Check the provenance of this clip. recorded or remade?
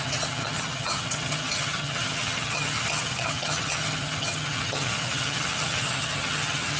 remade